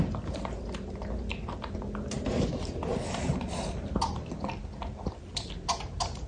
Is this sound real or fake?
real